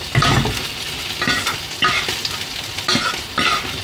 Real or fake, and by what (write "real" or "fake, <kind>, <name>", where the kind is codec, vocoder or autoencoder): real